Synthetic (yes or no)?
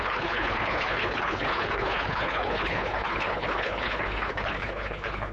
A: yes